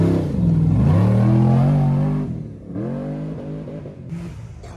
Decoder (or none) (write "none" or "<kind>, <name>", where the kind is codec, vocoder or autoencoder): none